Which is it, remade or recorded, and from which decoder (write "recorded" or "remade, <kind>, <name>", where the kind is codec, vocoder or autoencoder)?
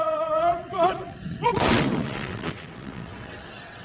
remade, vocoder, WaveNeXt